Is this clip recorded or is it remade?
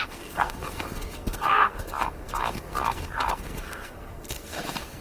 remade